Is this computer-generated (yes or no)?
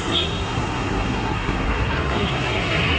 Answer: yes